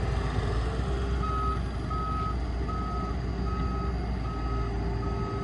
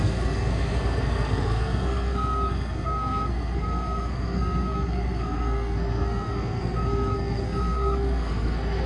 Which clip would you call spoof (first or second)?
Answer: second